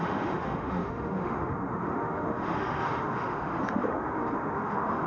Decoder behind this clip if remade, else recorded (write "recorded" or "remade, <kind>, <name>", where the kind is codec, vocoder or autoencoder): remade, autoencoder, DAC-VAE